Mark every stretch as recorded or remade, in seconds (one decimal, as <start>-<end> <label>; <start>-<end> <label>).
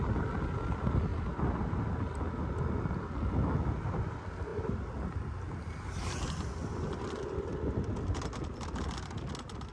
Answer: 0.0-9.7 recorded